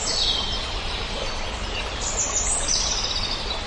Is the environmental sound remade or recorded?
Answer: recorded